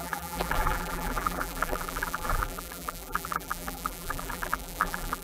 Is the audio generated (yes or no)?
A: yes